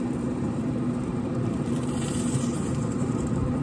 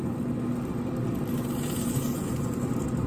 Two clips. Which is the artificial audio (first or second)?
first